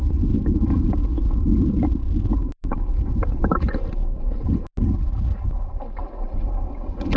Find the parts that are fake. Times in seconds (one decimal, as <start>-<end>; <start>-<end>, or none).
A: none